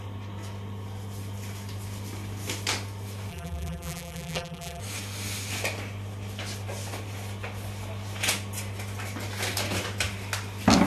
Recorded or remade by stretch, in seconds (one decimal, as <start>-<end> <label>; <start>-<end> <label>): 0.0-3.3 recorded; 3.3-4.8 remade; 4.8-10.9 recorded